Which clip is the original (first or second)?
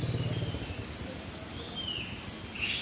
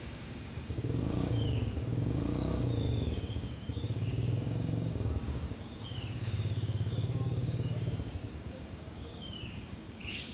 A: first